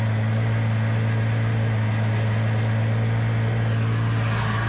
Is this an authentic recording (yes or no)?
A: yes